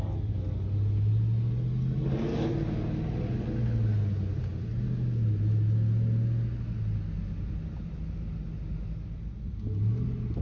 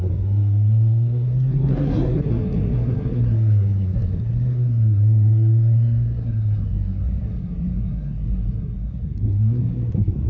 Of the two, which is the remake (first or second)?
second